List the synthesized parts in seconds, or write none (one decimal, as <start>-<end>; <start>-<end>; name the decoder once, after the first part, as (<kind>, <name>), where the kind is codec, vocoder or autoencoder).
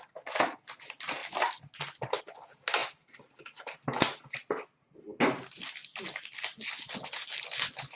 none